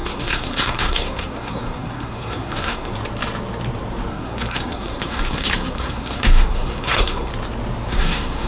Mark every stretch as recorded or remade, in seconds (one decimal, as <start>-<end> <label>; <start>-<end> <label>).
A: 0.0-2.9 remade; 2.9-4.1 recorded; 4.1-7.3 remade; 7.3-7.9 recorded; 7.9-8.5 remade